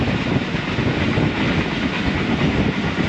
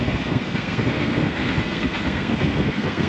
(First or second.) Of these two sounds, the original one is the first